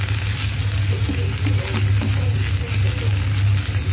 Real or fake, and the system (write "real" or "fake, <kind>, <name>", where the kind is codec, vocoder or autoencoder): real